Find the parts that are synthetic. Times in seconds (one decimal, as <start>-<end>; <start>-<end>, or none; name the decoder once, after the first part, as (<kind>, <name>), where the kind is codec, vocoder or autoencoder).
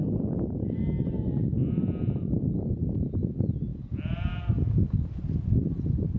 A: 3.7-4.6 (vocoder, BigVGAN v2)